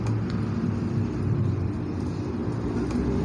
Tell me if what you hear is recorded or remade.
recorded